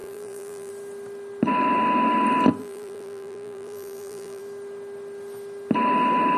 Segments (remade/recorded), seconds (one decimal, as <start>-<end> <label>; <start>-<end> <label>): 0.0-0.7 remade; 0.7-2.6 recorded; 2.6-4.4 remade; 4.4-6.4 recorded